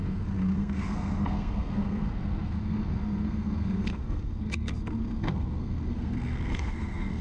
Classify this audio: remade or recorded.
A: remade